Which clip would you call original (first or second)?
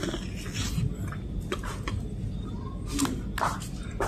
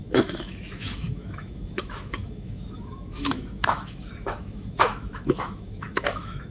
first